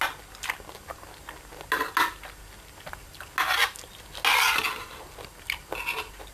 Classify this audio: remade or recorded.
recorded